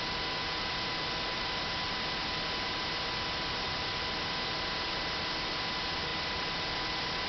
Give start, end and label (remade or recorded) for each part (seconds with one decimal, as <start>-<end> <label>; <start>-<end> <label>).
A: 0.0-7.3 recorded